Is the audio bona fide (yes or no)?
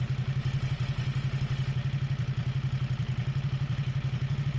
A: yes